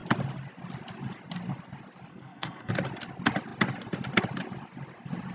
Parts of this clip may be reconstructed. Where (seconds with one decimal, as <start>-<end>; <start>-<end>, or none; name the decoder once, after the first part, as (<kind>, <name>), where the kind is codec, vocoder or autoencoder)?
2.1-2.7 (codec, SNAC)